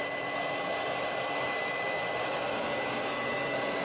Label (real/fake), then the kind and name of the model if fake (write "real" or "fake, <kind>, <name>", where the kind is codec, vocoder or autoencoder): real